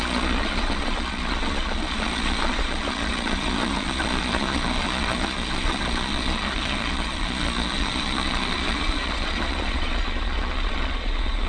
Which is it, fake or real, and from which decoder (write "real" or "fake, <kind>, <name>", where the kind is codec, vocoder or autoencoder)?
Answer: fake, vocoder, Vocos